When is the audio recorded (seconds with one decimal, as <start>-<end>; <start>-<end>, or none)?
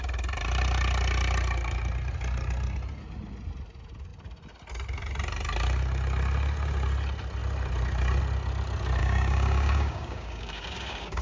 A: 0.0-9.0